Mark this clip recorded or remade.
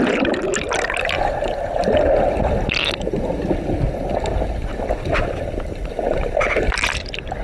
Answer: recorded